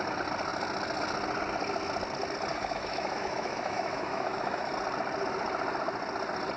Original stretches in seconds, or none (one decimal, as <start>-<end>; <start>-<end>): 0.0-2.5; 4.7-6.6